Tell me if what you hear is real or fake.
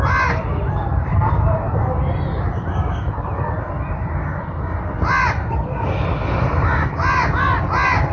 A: real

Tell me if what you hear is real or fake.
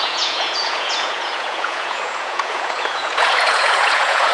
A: fake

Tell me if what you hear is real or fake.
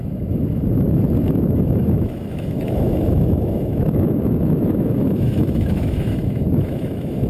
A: fake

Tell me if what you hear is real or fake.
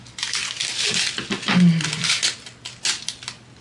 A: real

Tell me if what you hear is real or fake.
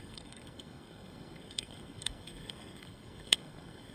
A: fake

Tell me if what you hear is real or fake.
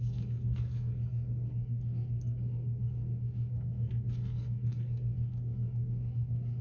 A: fake